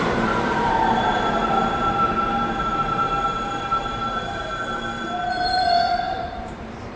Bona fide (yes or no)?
no